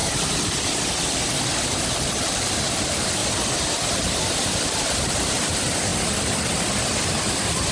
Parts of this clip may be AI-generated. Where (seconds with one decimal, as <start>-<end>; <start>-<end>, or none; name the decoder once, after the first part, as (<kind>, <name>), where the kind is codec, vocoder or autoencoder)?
1.4-3.2 (vocoder, BigVGAN v2); 4.2-5.9; 7.1-7.7